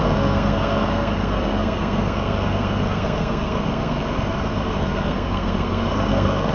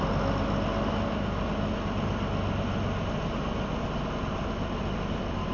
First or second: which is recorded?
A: second